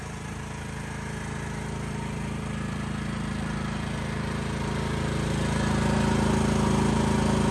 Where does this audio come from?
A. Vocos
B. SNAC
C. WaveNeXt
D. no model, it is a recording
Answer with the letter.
D